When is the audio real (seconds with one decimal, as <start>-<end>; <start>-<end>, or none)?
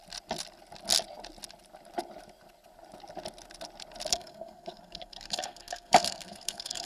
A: 0.0-4.1